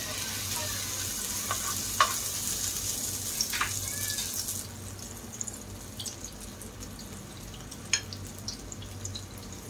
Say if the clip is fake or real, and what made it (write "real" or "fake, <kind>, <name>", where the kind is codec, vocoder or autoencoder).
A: real